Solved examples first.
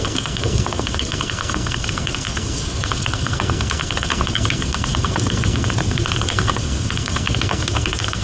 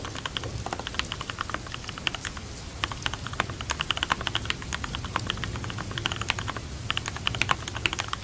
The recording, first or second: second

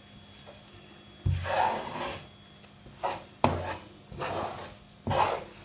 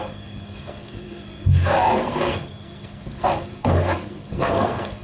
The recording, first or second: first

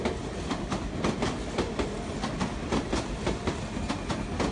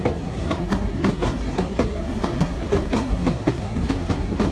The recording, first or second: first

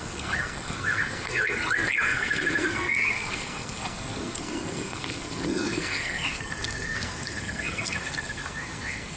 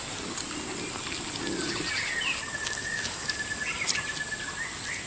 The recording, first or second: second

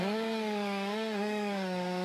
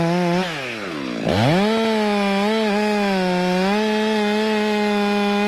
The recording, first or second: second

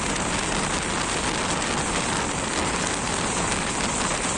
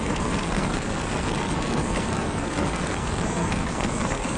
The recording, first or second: first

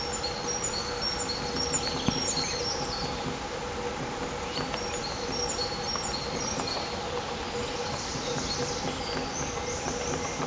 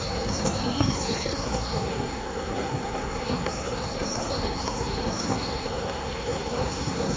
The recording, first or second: first